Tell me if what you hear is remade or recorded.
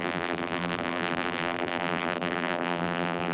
remade